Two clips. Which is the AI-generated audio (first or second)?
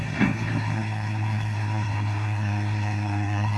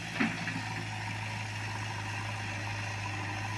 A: first